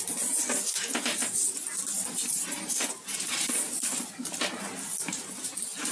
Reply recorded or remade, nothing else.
recorded